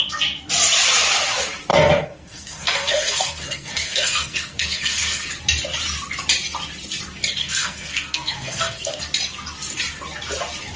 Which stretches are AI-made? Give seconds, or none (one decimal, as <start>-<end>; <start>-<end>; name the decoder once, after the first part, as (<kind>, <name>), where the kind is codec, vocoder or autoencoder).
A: 1.7-5.3 (codec, SNAC); 7.4-9.0

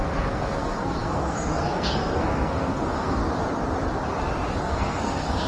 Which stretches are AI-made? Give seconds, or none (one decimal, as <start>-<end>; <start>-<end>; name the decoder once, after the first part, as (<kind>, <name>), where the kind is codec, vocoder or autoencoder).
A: 0.0-3.2 (codec, SNAC); 4.6-5.5